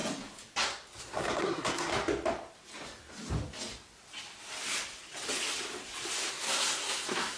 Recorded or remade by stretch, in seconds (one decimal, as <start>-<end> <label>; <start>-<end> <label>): 0.0-1.0 recorded; 1.0-1.9 remade; 1.9-6.3 recorded; 6.3-7.4 remade